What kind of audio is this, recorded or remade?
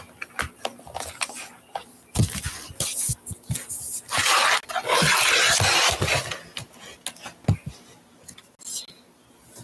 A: recorded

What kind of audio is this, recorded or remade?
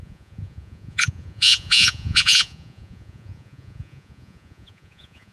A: remade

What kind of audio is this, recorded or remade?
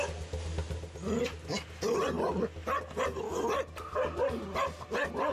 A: recorded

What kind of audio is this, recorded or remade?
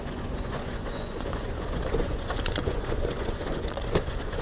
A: remade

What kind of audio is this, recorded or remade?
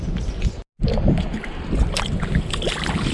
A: recorded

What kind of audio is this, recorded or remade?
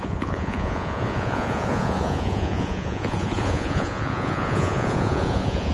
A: remade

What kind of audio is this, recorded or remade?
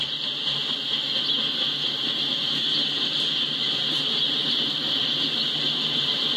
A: recorded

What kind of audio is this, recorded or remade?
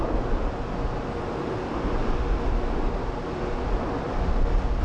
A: recorded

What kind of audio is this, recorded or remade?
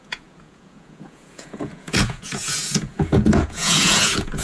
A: remade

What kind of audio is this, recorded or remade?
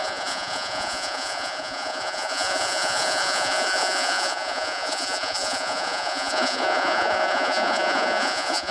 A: remade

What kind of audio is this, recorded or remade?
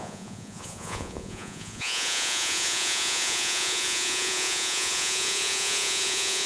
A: remade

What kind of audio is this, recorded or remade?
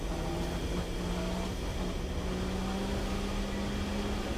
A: recorded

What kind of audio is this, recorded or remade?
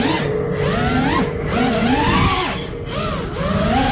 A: recorded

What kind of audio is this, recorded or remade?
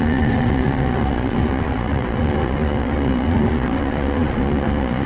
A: remade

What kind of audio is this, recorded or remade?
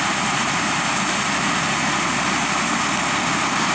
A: recorded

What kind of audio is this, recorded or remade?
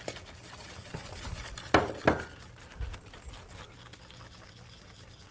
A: recorded